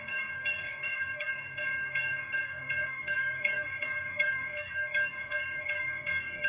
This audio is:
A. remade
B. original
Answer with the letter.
A